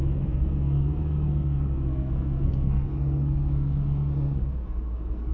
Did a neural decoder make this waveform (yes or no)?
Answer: yes